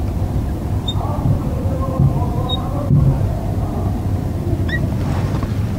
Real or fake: fake